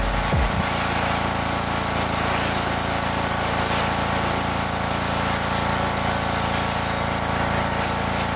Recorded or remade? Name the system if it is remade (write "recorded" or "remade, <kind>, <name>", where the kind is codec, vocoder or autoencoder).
recorded